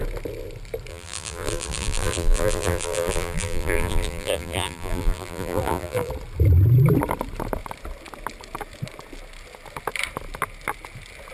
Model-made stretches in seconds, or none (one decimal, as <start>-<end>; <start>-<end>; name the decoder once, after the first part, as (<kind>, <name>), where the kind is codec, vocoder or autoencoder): 0.9-6.1 (vocoder, BigVGAN v2)